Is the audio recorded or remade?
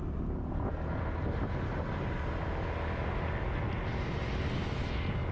recorded